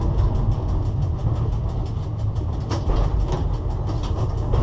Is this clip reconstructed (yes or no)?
no